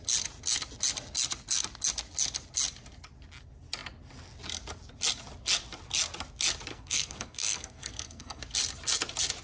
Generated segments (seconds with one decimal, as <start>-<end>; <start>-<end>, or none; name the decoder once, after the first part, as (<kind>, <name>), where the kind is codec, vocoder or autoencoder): 6.7-8.4 (codec, SNAC)